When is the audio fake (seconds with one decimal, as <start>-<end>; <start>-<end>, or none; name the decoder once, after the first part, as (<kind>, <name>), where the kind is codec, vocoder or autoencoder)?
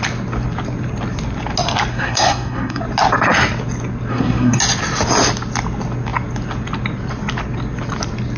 1.9-2.8 (codec, SNAC); 4.1-4.6